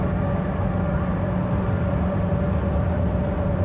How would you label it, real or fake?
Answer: real